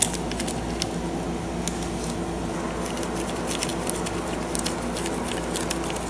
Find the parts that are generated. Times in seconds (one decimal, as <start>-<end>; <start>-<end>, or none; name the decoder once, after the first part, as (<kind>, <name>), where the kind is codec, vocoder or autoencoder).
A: none

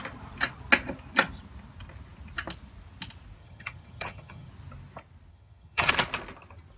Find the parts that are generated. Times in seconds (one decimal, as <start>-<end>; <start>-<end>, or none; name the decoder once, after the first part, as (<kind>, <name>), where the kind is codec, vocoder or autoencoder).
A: 3.4-4.5 (vocoder, HiFi-GAN); 5.3-5.9

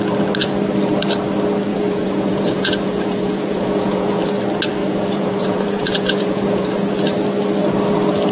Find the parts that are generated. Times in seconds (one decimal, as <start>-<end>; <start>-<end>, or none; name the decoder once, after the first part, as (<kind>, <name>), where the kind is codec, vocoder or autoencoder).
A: 1.7-4.2 (vocoder, Vocos); 4.8-7.0